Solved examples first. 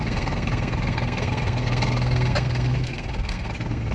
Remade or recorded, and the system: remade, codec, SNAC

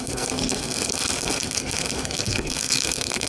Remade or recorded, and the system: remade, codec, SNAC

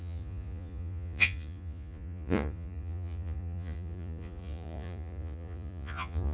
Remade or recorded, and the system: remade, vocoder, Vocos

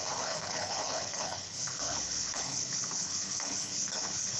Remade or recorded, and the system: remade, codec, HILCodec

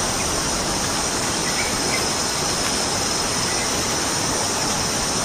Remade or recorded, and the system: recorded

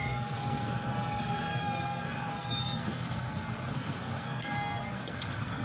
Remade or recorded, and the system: remade, codec, SNAC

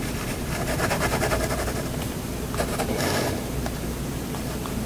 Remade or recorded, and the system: remade, vocoder, BigVGAN v2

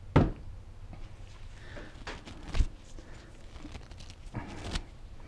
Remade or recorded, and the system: recorded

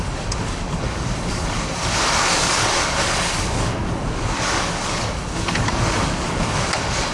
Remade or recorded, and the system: remade, codec, DAC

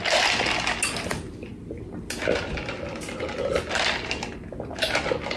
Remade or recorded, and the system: recorded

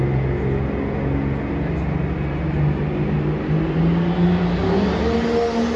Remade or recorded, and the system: recorded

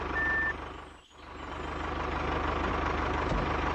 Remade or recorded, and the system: recorded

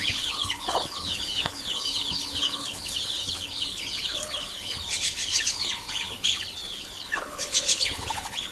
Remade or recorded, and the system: remade, codec, HILCodec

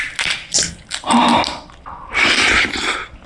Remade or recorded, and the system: recorded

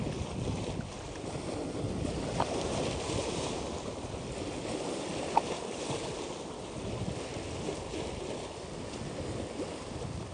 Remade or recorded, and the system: recorded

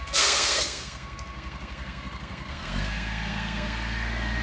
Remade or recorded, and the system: remade, codec, SNAC